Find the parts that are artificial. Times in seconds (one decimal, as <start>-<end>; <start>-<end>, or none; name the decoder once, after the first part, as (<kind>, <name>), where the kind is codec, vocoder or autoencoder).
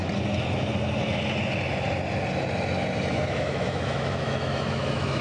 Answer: 3.1-5.2 (autoencoder, DAC-VAE)